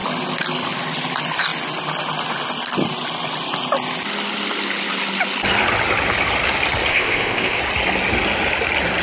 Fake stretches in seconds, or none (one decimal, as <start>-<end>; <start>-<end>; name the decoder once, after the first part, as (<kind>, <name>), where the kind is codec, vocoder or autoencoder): 6.9-7.6 (codec, ZipCodec)